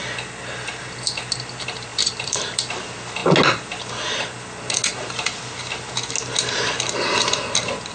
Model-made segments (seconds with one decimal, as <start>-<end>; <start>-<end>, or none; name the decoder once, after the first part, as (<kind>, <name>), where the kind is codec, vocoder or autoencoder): 1.9-2.8 (vocoder, BigVGAN v2)